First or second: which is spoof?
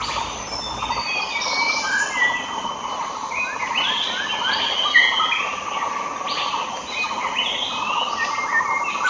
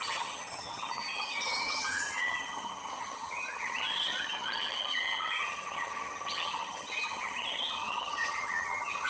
second